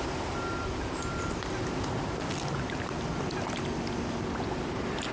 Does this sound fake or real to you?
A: real